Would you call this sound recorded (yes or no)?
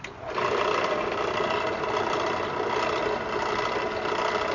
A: yes